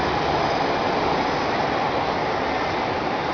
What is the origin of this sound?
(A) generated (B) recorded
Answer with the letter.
B